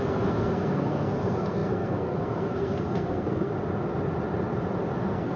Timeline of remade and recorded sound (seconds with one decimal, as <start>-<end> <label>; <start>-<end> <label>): 0.0-3.5 remade; 3.5-5.0 recorded; 5.0-5.4 remade